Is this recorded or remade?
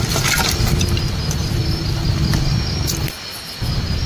recorded